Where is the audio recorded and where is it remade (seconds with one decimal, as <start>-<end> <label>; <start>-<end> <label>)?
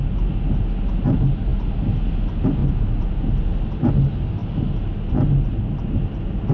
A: 0.0-6.5 recorded